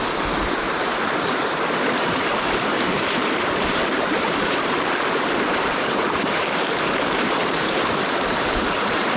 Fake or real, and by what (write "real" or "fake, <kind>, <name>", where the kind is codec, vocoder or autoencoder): fake, vocoder, BigVGAN v2